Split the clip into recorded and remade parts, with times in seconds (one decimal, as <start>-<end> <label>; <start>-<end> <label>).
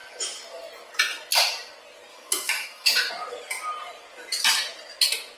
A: 0.0-2.1 recorded; 2.1-3.1 remade; 3.1-5.4 recorded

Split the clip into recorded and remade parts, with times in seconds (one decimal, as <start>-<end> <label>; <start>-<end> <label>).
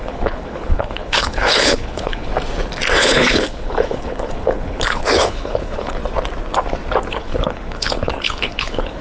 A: 0.0-2.3 remade; 2.3-3.0 recorded; 3.0-6.0 remade; 6.0-7.1 recorded; 7.1-9.0 remade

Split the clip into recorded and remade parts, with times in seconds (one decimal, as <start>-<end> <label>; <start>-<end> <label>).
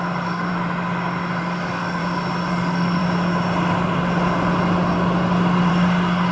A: 0.0-0.5 remade; 0.5-1.4 recorded; 1.4-2.0 remade; 2.0-2.5 recorded; 2.5-3.0 remade; 3.0-5.7 recorded; 5.7-6.3 remade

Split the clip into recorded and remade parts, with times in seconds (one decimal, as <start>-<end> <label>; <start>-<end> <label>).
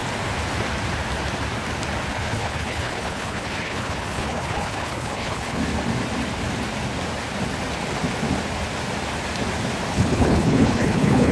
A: 0.0-2.1 recorded; 2.1-5.6 remade; 5.6-9.9 recorded; 9.9-11.3 remade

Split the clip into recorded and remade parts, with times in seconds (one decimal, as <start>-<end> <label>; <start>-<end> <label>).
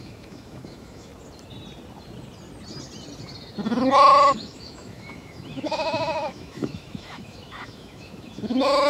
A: 0.0-1.1 remade; 1.1-4.1 recorded; 4.1-8.9 remade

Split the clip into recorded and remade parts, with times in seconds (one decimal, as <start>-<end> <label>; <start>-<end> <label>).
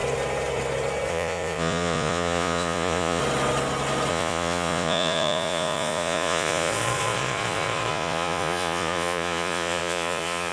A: 0.0-1.1 recorded; 1.1-3.2 remade; 3.2-4.1 recorded; 4.1-10.5 remade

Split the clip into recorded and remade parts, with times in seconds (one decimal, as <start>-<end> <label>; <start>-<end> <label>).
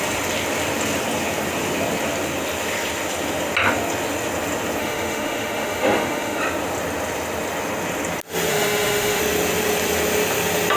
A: 0.0-4.8 recorded; 4.8-6.4 remade; 6.4-8.5 recorded; 8.5-9.2 remade; 9.2-10.8 recorded